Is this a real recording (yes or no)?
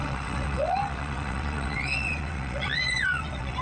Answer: no